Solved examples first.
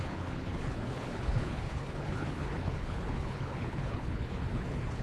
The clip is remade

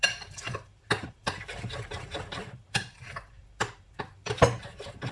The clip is remade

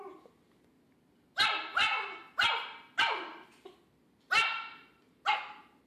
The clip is recorded